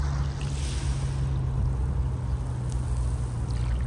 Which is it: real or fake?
real